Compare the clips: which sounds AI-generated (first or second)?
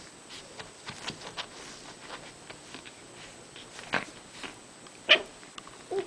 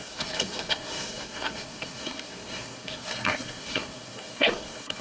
second